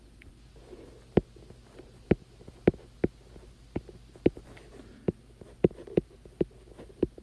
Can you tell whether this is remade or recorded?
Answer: recorded